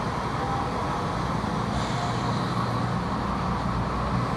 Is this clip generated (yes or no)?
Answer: no